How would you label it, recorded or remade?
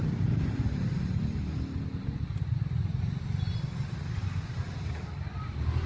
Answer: recorded